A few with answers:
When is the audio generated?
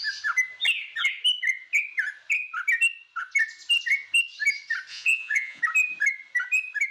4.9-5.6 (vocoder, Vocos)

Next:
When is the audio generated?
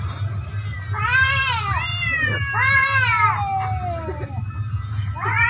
none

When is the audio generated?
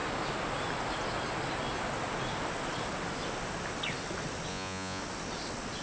4.5-5.0 (vocoder, Vocos)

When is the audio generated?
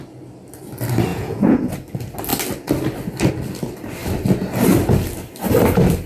1.1-1.7 (vocoder, Vocos)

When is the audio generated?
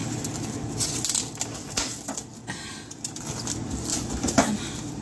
3.9-4.5 (vocoder, Vocos)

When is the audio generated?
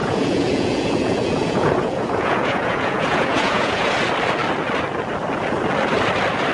0.0-3.9 (vocoder, Vocos)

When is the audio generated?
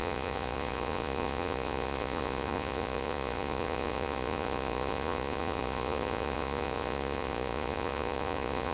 0.0-8.7 (vocoder, Vocos)